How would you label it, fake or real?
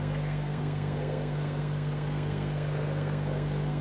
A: fake